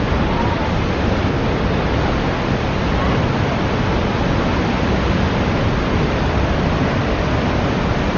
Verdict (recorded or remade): recorded